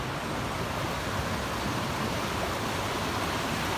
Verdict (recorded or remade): recorded